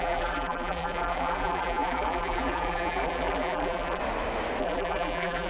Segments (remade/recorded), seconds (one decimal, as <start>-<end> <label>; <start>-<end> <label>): 0.0-4.0 remade; 4.0-4.6 recorded; 4.6-5.5 remade